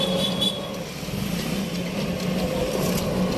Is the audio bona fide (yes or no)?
yes